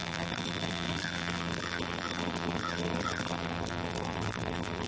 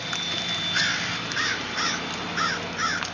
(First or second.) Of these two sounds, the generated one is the first